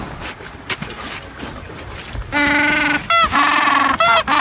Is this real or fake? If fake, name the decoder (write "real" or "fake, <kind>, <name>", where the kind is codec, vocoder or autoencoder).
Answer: real